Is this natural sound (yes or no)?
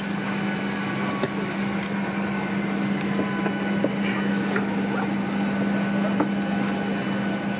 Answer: yes